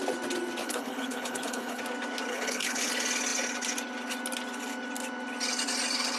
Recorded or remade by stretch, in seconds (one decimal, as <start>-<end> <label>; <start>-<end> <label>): 0.0-0.6 recorded; 0.6-1.8 remade; 1.8-2.3 recorded; 2.3-2.9 remade; 2.9-6.2 recorded